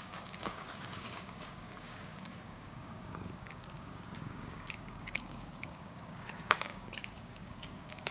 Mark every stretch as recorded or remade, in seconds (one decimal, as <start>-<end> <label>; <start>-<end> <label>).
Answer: 0.0-8.1 remade